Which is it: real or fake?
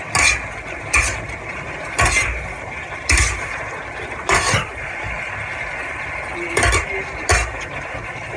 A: real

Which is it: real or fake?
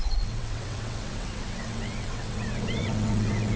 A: fake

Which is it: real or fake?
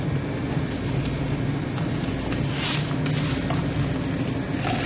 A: real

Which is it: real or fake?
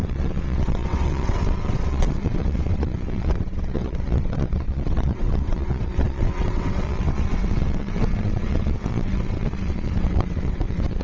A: fake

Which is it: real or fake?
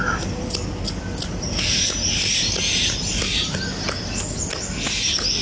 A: real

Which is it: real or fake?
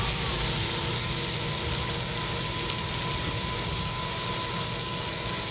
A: real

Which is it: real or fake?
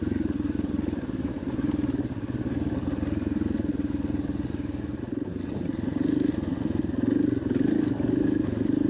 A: real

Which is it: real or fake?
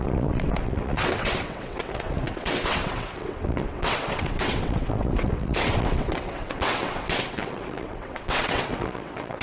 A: fake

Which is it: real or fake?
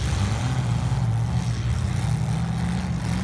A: real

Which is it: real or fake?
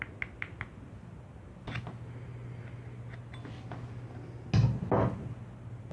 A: real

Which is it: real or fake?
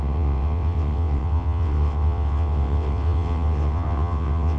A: fake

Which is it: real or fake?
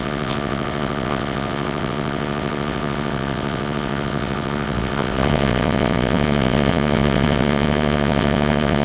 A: fake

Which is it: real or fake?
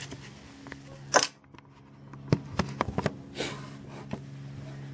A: real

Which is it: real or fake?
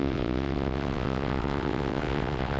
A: fake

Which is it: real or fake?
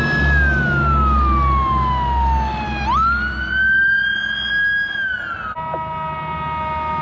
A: real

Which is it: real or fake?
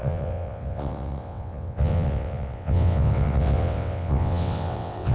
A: fake